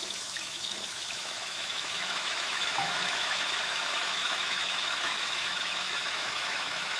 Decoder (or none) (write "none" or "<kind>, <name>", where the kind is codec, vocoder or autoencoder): autoencoder, DAC-VAE